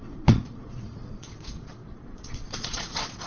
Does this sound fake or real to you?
fake